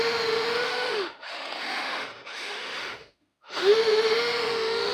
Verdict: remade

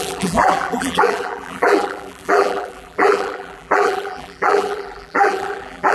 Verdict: remade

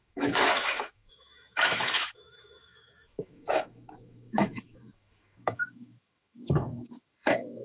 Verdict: remade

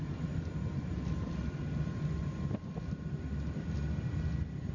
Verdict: recorded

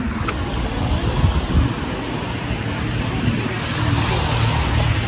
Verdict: recorded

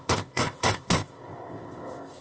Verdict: remade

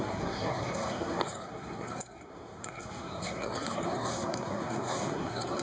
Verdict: remade